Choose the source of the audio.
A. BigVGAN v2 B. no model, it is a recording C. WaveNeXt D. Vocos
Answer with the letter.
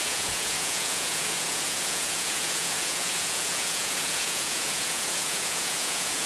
D